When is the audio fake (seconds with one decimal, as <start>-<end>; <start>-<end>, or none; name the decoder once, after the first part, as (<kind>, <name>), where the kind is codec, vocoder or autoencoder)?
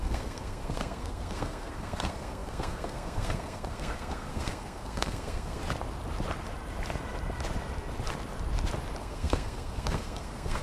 0.0-5.6 (codec, SNAC); 9.0-10.6